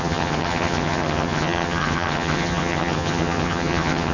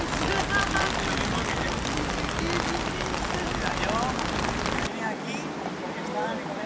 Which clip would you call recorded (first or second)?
second